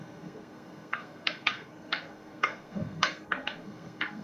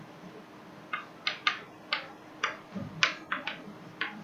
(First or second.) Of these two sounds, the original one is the second